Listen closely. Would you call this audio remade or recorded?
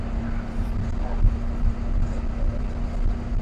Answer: recorded